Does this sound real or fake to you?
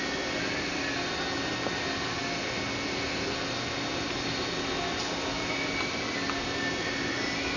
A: real